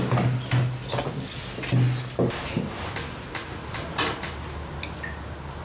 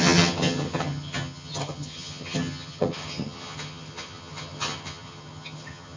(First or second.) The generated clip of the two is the second